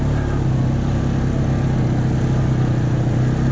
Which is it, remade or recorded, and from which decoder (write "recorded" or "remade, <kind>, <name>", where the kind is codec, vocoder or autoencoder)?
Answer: recorded